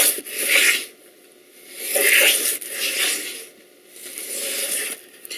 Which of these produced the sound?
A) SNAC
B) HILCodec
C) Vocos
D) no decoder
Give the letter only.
D